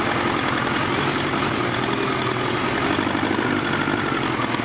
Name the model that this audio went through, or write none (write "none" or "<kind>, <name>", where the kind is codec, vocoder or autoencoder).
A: none